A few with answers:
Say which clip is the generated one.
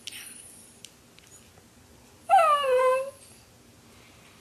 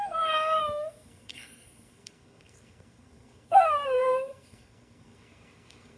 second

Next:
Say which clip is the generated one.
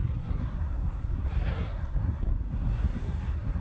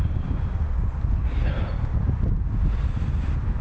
first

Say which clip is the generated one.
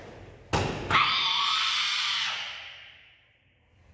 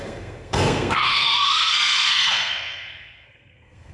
second